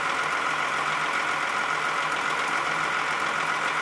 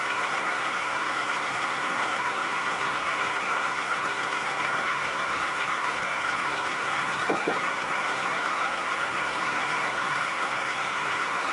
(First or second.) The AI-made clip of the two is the second